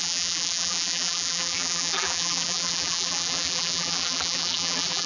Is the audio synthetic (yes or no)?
yes